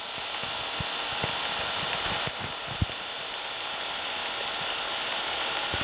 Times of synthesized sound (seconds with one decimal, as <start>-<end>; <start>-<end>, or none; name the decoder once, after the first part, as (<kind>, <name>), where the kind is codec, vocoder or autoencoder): 0.0-0.4 (vocoder, BigVGAN v2); 1.6-4.2; 5.1-5.8